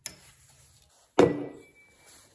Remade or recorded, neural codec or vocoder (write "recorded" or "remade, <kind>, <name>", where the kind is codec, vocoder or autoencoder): recorded